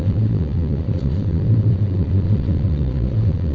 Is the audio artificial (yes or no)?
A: yes